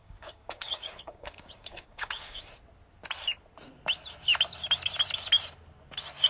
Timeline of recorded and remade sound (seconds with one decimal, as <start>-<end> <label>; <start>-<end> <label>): 0.0-2.5 remade; 2.5-6.3 recorded